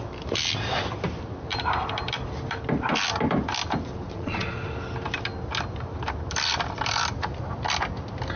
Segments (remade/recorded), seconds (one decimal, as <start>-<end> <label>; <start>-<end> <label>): 0.0-4.1 recorded; 4.1-4.7 remade; 4.7-8.4 recorded

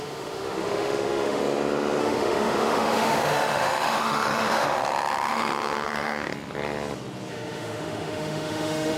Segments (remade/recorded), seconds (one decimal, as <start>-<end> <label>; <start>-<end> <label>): 0.0-1.4 remade; 1.4-2.0 recorded; 2.0-6.3 remade; 6.3-7.3 recorded; 7.3-9.0 remade

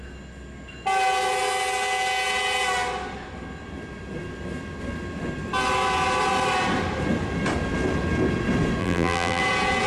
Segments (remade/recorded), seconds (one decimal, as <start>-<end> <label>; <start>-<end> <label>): 0.0-8.8 recorded; 8.8-9.4 remade; 9.4-9.9 recorded

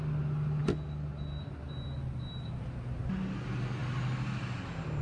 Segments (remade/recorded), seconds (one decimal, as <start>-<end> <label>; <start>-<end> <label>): 0.0-5.0 recorded

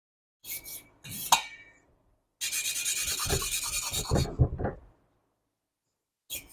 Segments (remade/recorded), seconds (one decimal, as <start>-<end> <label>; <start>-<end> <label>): 0.0-6.5 recorded

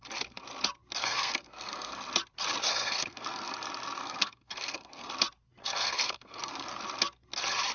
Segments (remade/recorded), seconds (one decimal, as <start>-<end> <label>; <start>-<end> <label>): 0.0-1.0 recorded; 1.0-1.9 remade; 1.9-2.7 recorded; 2.7-3.5 remade; 3.5-4.0 recorded; 4.0-5.1 remade; 5.1-5.6 recorded; 5.6-6.8 remade; 6.8-7.7 recorded